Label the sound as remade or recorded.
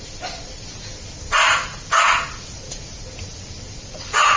recorded